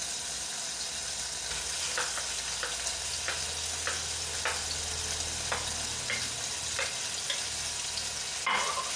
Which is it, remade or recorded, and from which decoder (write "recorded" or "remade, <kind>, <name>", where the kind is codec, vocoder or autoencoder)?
recorded